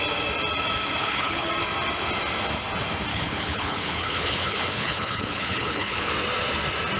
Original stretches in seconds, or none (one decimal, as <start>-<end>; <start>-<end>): 0.0-1.0; 1.5-3.1; 6.1-7.0